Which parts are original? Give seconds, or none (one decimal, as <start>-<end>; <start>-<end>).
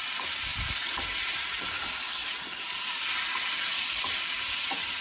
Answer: 0.0-5.0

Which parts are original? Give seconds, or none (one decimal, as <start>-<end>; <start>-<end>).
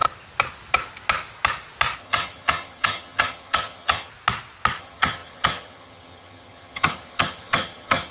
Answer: 0.0-2.0; 4.1-4.8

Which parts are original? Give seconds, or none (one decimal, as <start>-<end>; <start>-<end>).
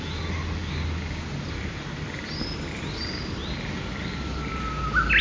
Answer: 0.0-5.2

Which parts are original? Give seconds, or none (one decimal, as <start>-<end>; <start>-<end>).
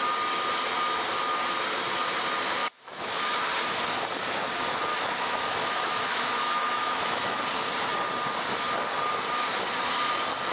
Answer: 0.0-2.6; 3.5-4.9; 7.4-10.5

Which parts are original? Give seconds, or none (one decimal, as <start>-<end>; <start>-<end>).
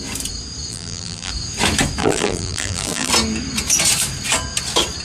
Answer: 0.0-0.7; 1.3-2.0; 3.1-5.0